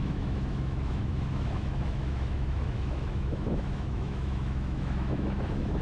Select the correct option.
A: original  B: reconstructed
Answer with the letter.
B